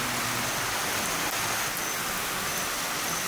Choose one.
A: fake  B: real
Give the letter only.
B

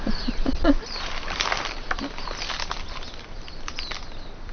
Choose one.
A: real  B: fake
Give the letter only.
A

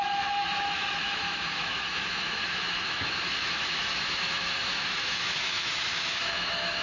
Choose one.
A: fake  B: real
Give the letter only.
A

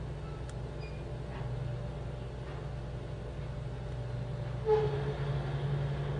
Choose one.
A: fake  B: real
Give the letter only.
B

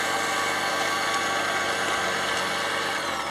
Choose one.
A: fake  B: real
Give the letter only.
B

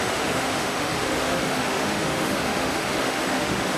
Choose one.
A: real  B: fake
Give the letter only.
B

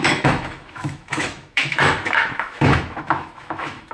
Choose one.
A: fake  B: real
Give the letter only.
A